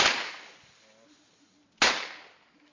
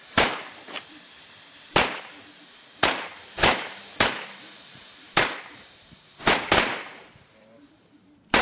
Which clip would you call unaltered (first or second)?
first